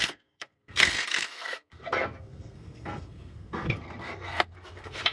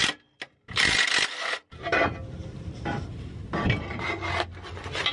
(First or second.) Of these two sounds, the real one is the second